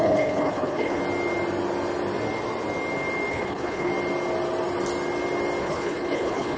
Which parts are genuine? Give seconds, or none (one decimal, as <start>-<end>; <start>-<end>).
1.0-3.3; 3.9-5.6

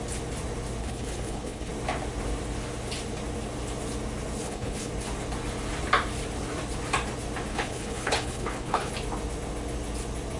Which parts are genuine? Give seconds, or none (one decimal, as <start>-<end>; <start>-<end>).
0.0-0.8; 1.7-4.4; 4.9-7.5; 8.9-10.4

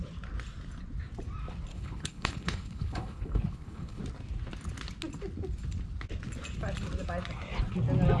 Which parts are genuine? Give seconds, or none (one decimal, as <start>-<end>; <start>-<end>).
0.0-1.7; 4.0-8.2

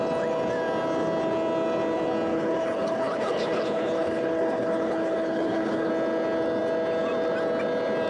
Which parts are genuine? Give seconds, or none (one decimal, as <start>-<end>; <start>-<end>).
0.0-2.3; 5.9-8.1